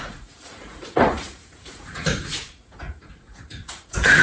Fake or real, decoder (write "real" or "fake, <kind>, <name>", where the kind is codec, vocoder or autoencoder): fake, vocoder, Vocos